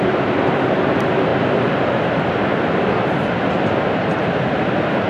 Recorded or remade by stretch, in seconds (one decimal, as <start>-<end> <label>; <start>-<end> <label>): 0.0-5.1 recorded